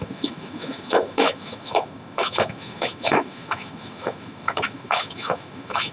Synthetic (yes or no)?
yes